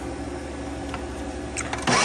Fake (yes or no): no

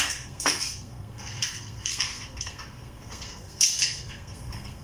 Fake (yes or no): yes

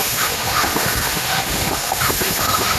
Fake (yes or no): yes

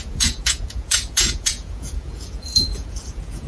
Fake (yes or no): yes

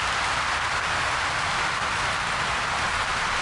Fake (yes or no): no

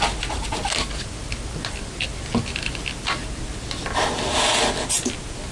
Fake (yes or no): no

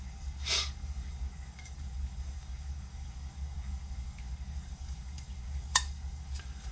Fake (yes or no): yes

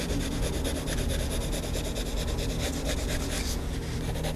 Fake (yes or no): no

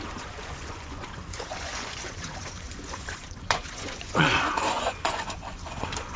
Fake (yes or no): yes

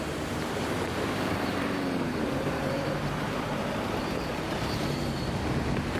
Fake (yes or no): yes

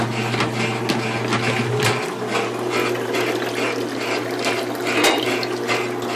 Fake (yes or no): no